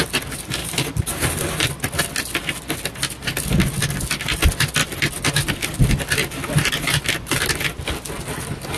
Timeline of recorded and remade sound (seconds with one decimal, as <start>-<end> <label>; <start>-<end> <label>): 0.0-0.6 recorded; 0.6-1.7 remade; 1.7-8.8 recorded